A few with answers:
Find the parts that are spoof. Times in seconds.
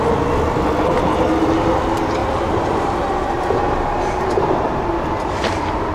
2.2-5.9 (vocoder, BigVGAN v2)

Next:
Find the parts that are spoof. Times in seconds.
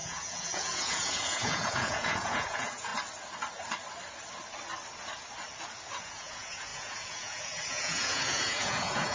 0.0-2.9 (vocoder, Vocos); 6.0-9.1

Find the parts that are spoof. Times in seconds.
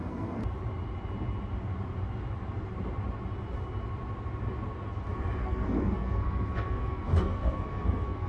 0.0-0.4 (codec, SNAC); 5.4-8.3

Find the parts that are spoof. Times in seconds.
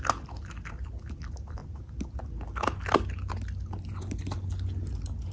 none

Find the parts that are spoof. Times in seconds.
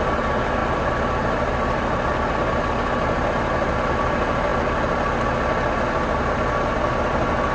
none